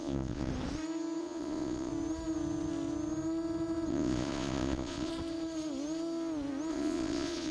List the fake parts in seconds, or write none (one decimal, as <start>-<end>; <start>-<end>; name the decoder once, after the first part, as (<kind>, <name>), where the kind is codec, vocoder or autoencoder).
0.0-0.5 (vocoder, Vocos); 1.2-1.9; 3.9-5.1; 6.7-7.5